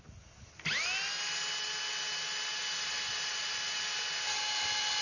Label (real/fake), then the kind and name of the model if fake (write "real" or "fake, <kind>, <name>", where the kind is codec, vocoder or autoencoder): real